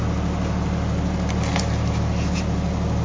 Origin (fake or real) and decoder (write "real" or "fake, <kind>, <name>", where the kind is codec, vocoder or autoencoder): real